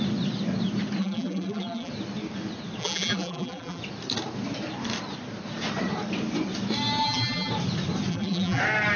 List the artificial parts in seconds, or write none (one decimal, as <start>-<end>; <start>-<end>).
1.0-1.9; 2.8-3.8; 7.0-7.5; 8.1-8.6